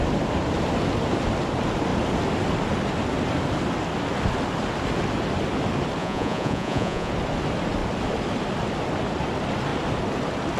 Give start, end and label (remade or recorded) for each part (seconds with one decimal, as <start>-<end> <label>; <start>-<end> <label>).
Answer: 0.0-6.0 recorded; 6.0-7.1 remade; 7.1-10.6 recorded